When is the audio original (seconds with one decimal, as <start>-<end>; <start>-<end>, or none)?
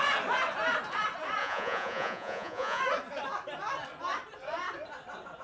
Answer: 0.0-1.4; 2.8-5.4